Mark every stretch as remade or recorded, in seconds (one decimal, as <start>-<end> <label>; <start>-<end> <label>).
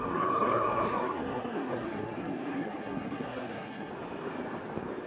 0.0-3.9 remade; 3.9-5.1 recorded